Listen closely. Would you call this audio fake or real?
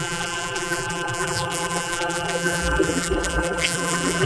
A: fake